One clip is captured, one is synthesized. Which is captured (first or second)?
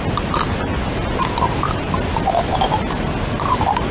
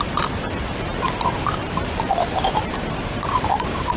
first